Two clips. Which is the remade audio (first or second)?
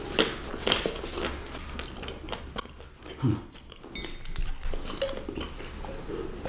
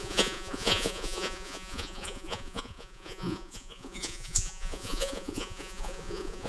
second